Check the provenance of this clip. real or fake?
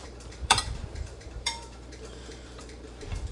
fake